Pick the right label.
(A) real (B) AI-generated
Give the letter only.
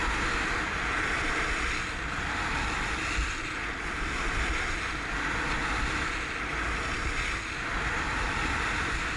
A